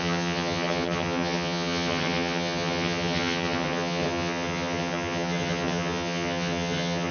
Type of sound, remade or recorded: remade